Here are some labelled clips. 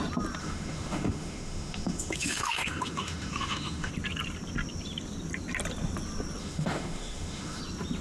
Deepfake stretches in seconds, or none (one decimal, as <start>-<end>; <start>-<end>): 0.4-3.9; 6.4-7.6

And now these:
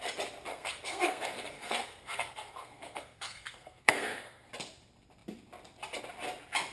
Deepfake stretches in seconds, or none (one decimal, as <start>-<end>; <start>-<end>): 0.5-4.5

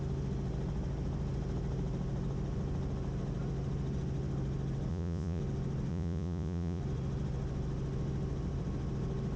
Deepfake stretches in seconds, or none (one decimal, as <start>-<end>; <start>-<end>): 4.9-5.4; 5.9-6.8